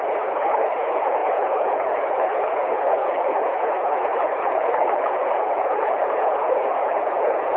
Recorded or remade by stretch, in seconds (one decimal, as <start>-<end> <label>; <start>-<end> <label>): 0.0-7.6 remade